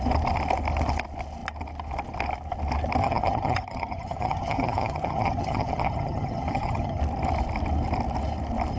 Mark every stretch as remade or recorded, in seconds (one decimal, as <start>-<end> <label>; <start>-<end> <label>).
0.0-3.0 recorded; 3.0-7.0 remade; 7.0-8.8 recorded